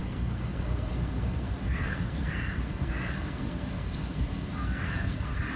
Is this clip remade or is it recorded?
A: remade